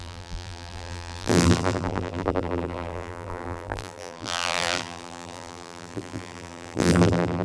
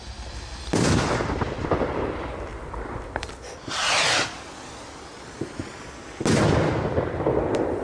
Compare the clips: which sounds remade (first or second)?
first